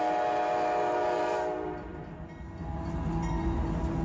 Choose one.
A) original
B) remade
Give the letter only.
A